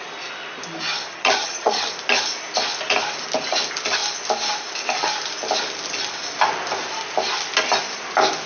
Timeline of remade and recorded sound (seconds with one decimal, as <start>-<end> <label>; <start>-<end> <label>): 0.0-1.1 recorded; 1.1-1.9 remade; 1.9-8.5 recorded